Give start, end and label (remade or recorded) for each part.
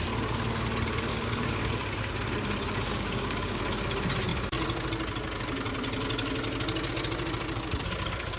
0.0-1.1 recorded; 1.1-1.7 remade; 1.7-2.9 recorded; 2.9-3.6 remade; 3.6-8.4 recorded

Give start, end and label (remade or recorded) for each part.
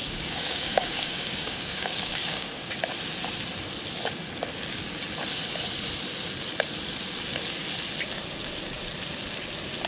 0.0-2.9 remade; 2.9-9.9 recorded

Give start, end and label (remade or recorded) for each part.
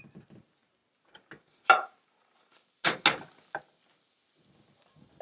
0.0-5.2 recorded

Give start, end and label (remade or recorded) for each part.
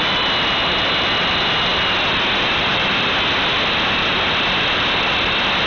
0.0-5.7 recorded